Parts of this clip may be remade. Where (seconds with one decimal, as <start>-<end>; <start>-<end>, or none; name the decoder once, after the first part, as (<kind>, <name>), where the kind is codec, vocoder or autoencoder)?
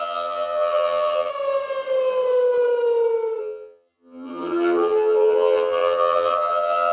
0.0-1.3 (vocoder, HiFi-GAN); 3.4-6.9